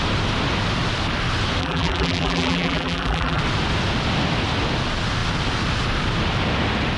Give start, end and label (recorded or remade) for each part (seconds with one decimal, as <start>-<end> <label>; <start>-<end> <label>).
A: 0.0-1.6 recorded; 1.6-3.4 remade; 3.4-7.0 recorded